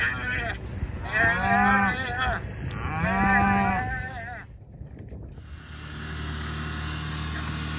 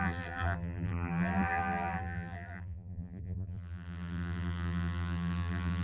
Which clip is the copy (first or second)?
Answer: second